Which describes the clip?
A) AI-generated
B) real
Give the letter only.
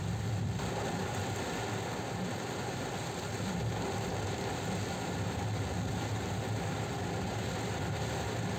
B